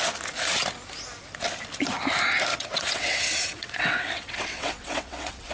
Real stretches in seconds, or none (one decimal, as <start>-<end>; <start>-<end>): 0.0-2.5